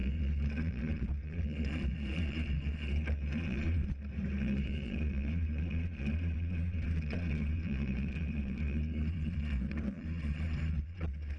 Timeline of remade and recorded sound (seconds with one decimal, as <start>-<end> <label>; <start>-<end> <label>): 0.0-3.8 remade; 3.8-4.4 recorded; 4.4-11.4 remade